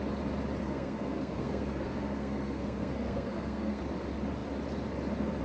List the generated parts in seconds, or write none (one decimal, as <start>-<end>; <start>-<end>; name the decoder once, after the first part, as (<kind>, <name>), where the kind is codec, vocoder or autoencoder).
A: 0.6-3.8 (codec, SNAC)